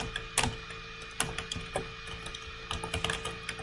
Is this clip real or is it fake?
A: real